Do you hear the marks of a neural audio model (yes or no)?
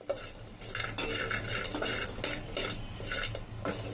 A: no